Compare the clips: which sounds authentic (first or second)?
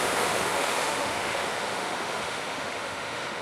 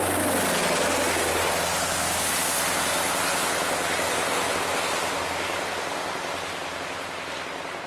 second